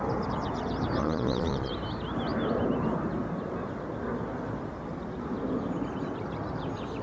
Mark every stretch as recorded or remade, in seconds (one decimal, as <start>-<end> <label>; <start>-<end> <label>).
0.0-1.0 recorded; 1.0-1.7 remade; 1.7-7.0 recorded